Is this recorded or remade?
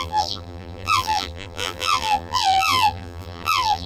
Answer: remade